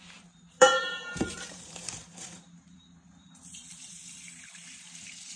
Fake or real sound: fake